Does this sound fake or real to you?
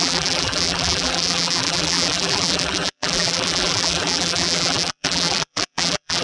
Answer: fake